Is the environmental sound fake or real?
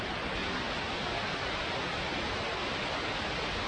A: real